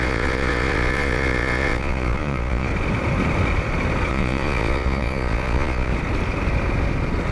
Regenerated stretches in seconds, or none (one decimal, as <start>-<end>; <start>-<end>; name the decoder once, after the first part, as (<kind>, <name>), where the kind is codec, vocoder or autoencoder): 0.0-2.7 (vocoder, Vocos); 4.1-5.9